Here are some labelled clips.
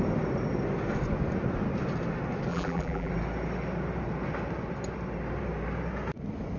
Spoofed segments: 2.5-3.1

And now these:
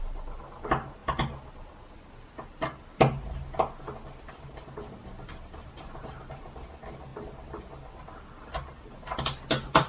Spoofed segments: none

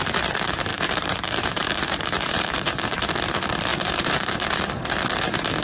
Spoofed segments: 0.7-3.1; 3.7-4.3

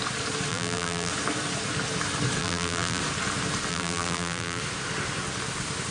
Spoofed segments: 0.5-1.1; 2.4-3.0; 3.7-4.6

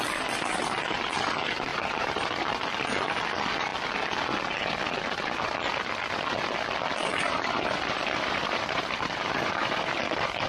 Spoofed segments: 1.7-3.2; 7.1-10.5

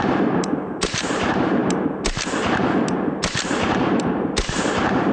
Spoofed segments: 0.0-1.6; 3.5-5.1